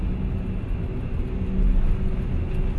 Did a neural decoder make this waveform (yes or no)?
no